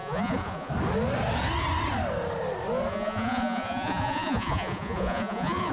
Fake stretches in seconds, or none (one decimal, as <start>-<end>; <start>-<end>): 0.0-0.7; 2.9-5.7